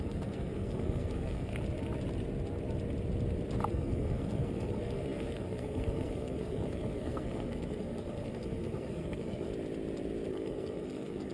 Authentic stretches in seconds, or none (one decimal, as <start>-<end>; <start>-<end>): 1.5-3.7; 9.5-10.3